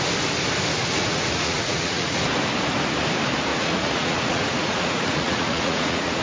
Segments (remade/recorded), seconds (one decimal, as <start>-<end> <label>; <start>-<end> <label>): 0.0-0.7 recorded; 0.7-2.2 remade; 2.2-3.5 recorded; 3.5-6.2 remade